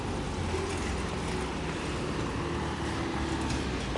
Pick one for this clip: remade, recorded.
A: recorded